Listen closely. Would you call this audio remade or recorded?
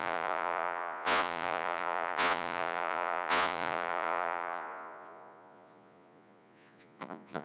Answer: remade